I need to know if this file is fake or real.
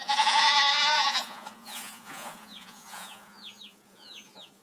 fake